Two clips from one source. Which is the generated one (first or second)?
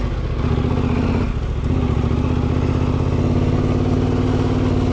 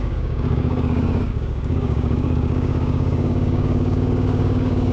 second